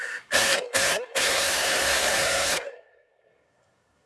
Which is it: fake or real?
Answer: fake